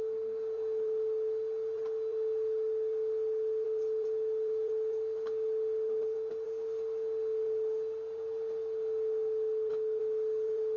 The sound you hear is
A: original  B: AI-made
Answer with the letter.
A